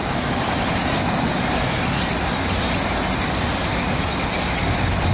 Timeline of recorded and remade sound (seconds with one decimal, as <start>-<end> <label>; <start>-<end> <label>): 0.0-5.1 recorded